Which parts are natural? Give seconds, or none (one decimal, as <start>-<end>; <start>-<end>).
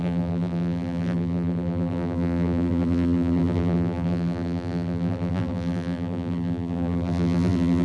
none